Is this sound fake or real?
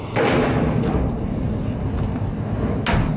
real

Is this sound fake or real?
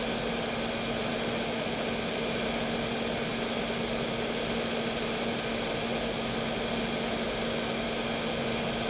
real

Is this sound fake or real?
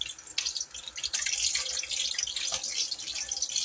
real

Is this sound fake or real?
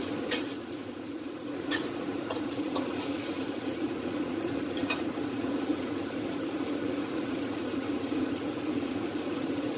fake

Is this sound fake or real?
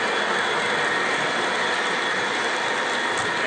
real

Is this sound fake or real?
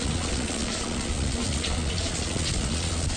fake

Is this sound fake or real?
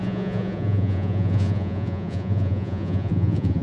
fake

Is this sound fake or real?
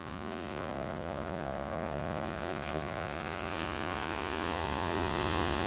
fake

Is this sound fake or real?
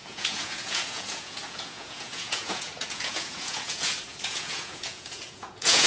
fake